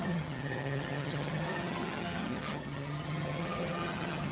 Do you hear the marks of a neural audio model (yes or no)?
yes